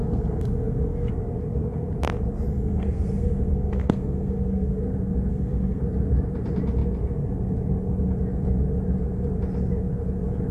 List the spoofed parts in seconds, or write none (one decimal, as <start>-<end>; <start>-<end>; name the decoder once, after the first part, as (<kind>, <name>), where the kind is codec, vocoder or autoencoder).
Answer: 0.0-1.1 (codec, SNAC); 2.5-4.8; 5.3-5.8